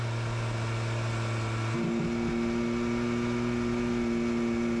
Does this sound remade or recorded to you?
recorded